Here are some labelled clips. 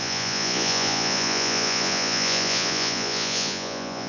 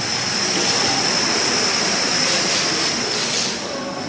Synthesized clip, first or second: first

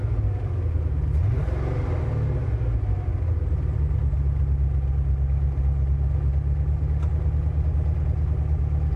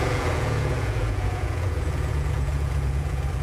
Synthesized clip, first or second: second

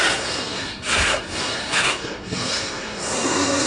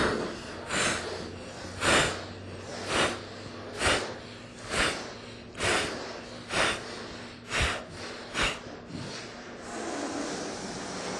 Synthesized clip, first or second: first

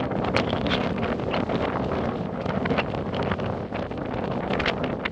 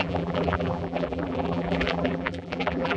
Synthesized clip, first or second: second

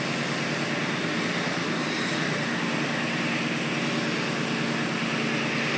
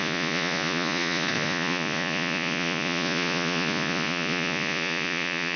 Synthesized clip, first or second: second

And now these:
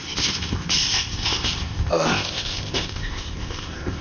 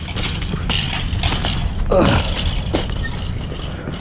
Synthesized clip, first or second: first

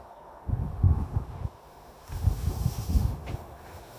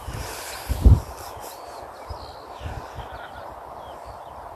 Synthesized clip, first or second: first